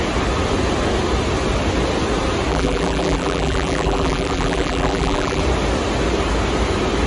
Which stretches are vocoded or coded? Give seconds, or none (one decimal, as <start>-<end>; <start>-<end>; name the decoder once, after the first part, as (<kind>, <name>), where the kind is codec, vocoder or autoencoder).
2.5-5.4 (vocoder, BigVGAN v2)